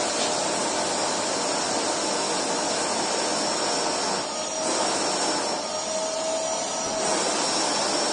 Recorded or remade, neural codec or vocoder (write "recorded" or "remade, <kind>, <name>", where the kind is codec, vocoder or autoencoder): recorded